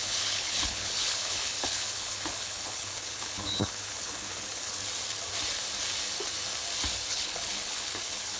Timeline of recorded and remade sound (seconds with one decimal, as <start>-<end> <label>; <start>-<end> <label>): 0.0-4.8 remade; 4.8-7.1 recorded; 7.1-8.4 remade

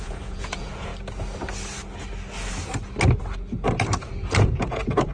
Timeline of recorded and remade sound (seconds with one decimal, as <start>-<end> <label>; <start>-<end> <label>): 0.0-0.9 remade; 0.9-4.0 recorded; 4.0-5.1 remade

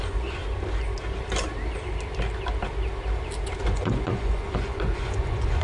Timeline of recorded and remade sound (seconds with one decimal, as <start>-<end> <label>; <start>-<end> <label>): 0.0-0.4 remade; 0.4-3.6 recorded; 3.6-5.6 remade

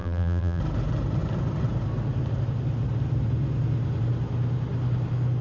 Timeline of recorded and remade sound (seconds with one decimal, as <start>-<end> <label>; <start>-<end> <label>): 0.0-0.6 remade; 0.6-5.4 recorded

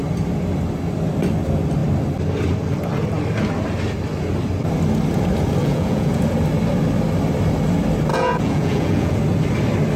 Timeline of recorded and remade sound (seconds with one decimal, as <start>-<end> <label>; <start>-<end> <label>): 0.0-5.6 recorded; 5.6-6.2 remade; 6.2-8.1 recorded; 8.1-9.2 remade; 9.2-10.0 recorded

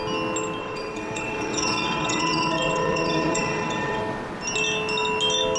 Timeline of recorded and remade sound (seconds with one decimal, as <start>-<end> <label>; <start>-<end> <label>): 0.0-0.6 recorded; 0.6-4.0 remade; 4.0-5.6 recorded

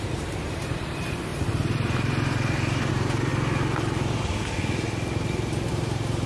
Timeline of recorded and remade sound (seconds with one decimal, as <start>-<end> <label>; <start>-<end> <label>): 0.0-1.3 remade; 1.3-2.9 recorded; 2.9-3.3 remade; 3.3-5.7 recorded; 5.7-6.3 remade

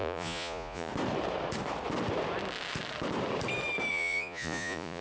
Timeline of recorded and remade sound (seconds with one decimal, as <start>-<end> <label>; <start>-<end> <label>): 0.0-0.9 remade; 0.9-3.9 recorded; 3.9-5.0 remade